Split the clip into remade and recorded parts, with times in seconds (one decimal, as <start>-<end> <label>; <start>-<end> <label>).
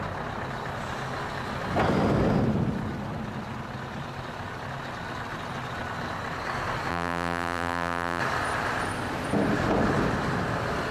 0.0-6.9 recorded; 6.9-8.2 remade; 8.2-10.9 recorded